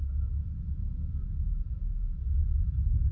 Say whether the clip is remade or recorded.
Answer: remade